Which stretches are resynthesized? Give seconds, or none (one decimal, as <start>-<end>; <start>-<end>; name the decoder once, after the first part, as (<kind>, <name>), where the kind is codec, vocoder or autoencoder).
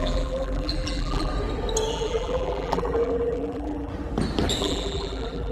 0.0-1.3 (vocoder, BigVGAN v2); 1.9-3.9; 4.6-5.5